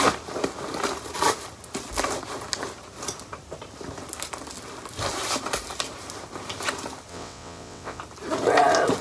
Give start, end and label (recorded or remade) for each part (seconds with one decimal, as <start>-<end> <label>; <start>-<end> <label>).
0.0-7.1 recorded; 7.1-8.0 remade; 8.0-9.0 recorded